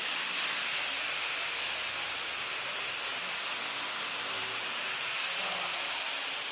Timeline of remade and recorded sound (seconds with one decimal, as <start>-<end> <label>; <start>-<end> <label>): 0.0-6.5 recorded